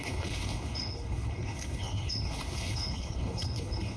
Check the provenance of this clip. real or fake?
fake